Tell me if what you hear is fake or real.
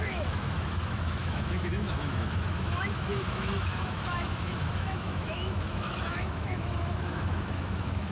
fake